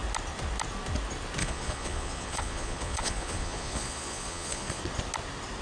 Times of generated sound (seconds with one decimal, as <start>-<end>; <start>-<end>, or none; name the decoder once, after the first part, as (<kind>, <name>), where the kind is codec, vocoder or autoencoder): 1.4-4.8 (vocoder, Vocos)